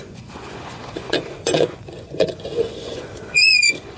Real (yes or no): no